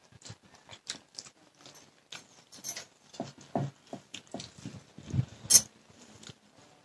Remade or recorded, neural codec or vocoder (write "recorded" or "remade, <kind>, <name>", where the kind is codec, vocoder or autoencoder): recorded